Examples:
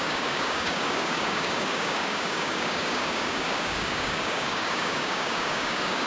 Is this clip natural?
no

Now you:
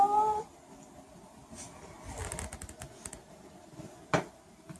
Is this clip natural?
yes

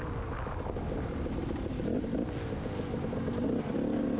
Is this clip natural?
yes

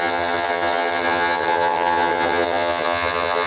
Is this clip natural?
no